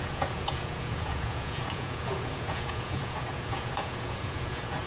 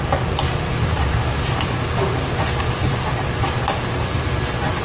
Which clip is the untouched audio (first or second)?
second